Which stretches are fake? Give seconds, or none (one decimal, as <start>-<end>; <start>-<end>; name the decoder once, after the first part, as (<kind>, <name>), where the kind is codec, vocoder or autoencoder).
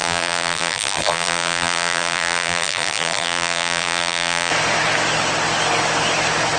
0.0-4.5 (vocoder, BigVGAN v2)